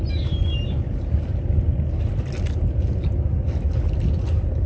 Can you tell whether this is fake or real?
real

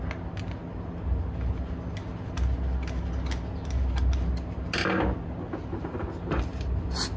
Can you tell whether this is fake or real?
real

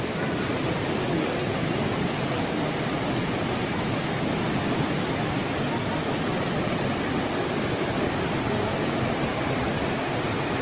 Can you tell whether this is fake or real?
real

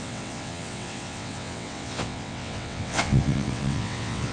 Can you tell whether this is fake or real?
fake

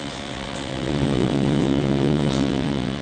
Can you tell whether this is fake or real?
fake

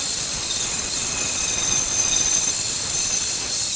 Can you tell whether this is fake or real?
fake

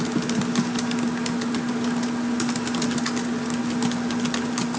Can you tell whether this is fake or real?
real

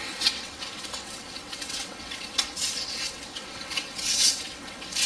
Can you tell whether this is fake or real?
fake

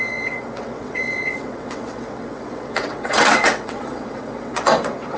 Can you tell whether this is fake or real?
fake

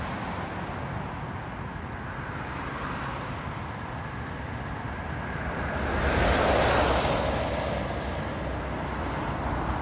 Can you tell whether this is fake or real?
real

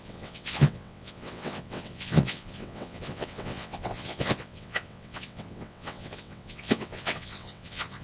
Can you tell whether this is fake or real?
fake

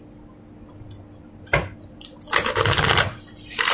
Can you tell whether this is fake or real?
real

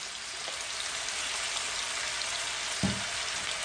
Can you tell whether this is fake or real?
real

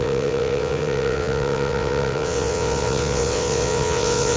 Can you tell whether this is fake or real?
fake